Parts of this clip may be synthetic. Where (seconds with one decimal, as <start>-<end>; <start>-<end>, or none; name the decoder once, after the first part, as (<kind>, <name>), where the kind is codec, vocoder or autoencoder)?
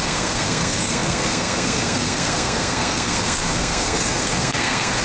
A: 0.0-5.0 (codec, SNAC)